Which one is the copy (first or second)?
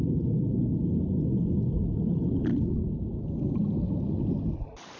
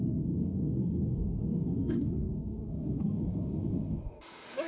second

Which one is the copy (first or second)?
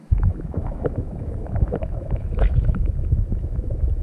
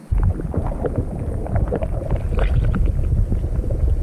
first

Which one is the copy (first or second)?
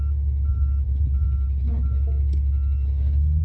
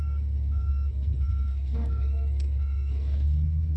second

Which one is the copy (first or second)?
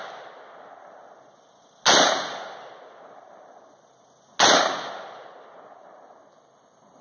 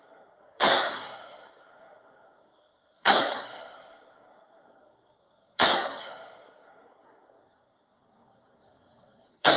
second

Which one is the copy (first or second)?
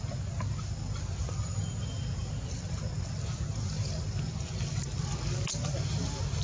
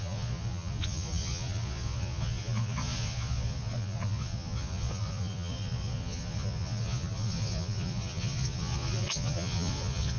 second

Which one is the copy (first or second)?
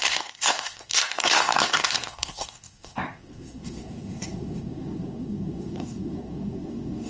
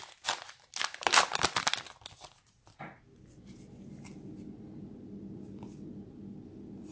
first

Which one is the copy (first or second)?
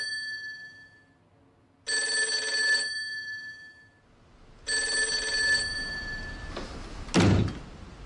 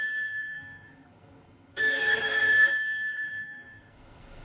second